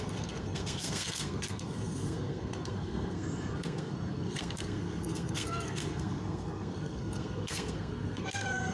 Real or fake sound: fake